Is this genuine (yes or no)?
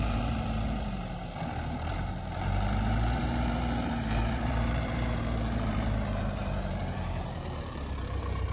no